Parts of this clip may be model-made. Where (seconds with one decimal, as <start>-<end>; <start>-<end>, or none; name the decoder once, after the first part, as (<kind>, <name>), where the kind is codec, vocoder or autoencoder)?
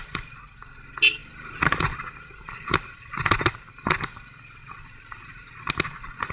1.2-3.4 (vocoder, BigVGAN v2)